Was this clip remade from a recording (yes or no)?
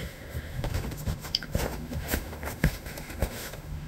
yes